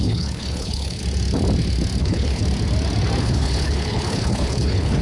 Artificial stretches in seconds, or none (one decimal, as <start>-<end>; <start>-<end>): 0.0-1.0; 2.0-2.4; 3.2-5.0